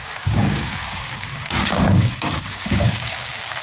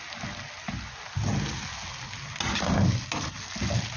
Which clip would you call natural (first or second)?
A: second